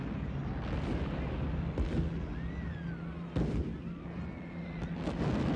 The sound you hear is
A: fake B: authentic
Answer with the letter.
B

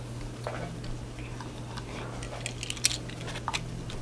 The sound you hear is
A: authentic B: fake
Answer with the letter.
A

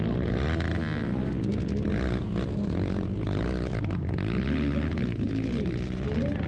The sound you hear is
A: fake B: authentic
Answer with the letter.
B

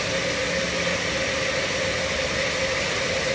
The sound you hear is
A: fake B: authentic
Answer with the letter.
B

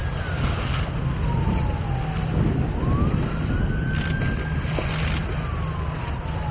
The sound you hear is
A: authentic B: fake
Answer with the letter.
A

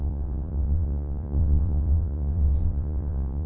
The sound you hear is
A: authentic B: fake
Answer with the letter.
B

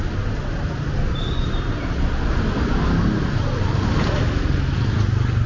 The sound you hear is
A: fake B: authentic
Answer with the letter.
B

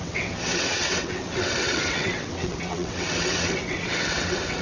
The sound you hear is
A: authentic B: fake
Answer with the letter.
B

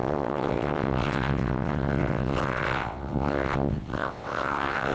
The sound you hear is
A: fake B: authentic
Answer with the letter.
A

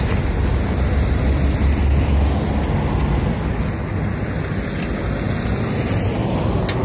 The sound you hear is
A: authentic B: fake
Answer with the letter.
A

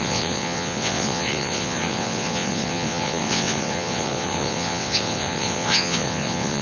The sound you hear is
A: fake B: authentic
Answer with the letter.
A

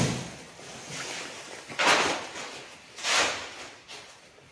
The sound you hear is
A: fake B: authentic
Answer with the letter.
B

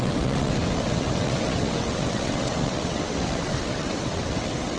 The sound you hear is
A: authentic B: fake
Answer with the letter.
B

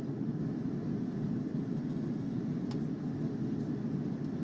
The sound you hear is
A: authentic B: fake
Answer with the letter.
A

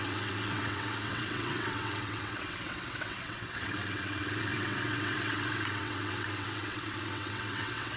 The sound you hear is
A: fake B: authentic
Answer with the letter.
A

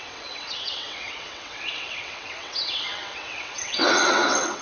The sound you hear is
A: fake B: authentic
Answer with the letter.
A